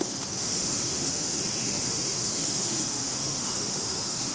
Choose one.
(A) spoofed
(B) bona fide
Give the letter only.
A